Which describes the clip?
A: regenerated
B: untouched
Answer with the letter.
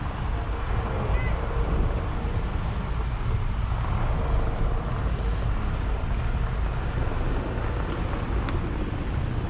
B